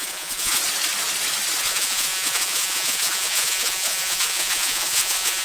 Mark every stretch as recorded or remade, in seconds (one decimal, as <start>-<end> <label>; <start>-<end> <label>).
0.0-0.6 remade; 0.6-1.6 recorded; 1.6-5.4 remade